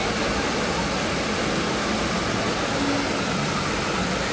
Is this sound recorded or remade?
recorded